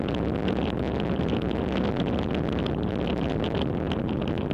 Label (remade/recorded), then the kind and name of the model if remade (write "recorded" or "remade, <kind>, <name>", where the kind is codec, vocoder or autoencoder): recorded